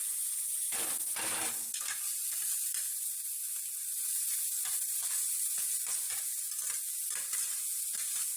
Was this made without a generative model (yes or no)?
yes